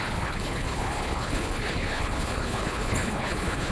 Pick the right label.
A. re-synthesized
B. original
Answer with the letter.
A